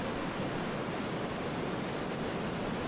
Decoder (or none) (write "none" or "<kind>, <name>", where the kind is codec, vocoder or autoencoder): none